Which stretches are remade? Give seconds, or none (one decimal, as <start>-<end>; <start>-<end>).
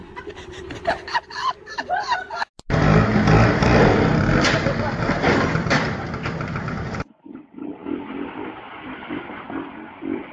none